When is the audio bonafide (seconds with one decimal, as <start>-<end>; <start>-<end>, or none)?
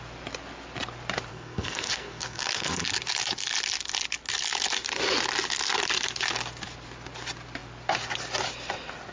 0.0-1.3; 2.8-9.1